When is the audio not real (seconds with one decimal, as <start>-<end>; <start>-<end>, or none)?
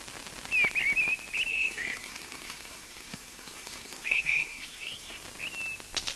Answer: 1.5-5.2